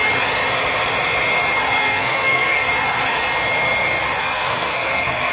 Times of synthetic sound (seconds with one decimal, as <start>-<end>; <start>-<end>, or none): 1.8-2.7; 4.2-5.3